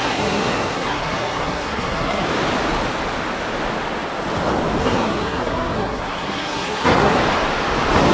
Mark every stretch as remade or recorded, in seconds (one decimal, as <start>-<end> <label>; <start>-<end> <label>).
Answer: 0.0-2.2 remade; 2.2-4.8 recorded; 4.8-7.2 remade; 7.2-8.1 recorded